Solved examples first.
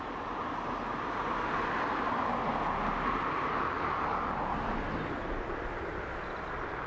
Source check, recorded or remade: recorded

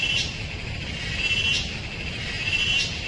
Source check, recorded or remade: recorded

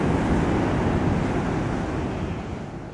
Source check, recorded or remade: recorded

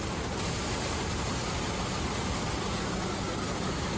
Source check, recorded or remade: recorded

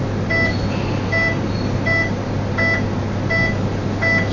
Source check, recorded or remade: recorded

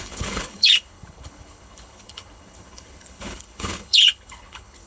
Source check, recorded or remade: remade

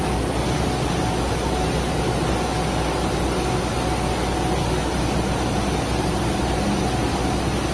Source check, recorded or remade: recorded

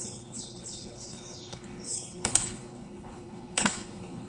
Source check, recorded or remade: remade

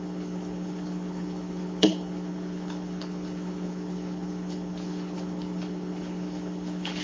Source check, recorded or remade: remade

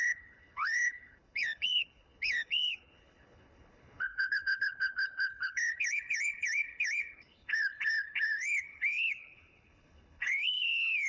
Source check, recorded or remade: remade